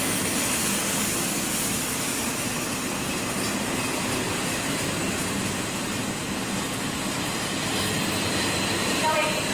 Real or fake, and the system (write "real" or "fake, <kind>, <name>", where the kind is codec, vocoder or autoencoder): real